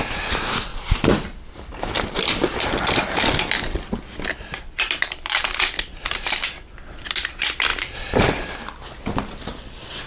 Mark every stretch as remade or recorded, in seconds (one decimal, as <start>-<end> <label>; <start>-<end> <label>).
0.0-3.2 recorded; 3.2-7.1 remade; 7.1-7.7 recorded; 7.7-8.2 remade; 8.2-10.1 recorded